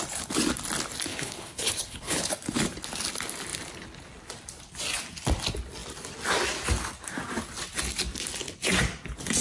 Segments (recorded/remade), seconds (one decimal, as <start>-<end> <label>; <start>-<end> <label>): 0.0-1.1 recorded; 1.1-2.3 remade; 2.3-9.4 recorded